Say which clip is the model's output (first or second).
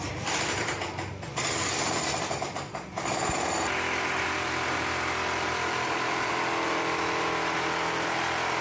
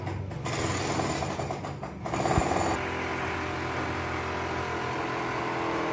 first